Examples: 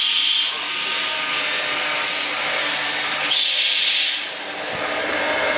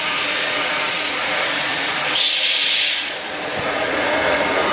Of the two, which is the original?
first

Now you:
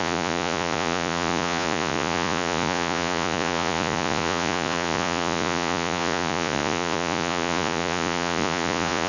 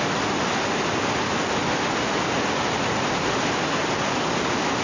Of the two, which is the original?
second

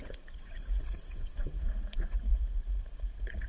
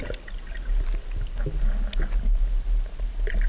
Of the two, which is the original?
second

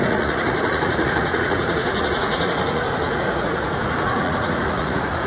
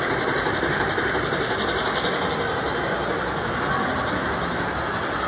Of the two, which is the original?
second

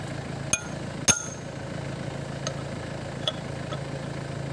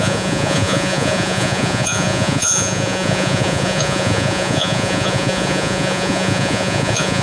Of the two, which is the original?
first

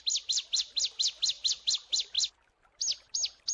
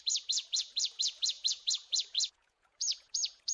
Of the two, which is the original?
first